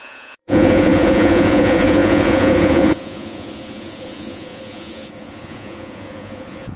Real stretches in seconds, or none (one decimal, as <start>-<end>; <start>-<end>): none